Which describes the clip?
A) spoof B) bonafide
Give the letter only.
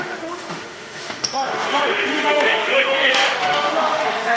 A